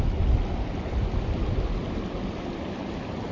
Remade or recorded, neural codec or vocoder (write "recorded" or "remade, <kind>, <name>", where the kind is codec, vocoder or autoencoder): recorded